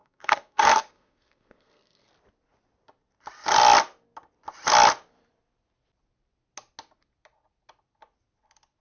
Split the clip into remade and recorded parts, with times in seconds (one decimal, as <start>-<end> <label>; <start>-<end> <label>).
0.0-2.1 remade; 2.1-8.8 recorded